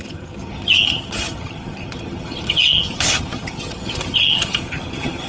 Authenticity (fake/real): fake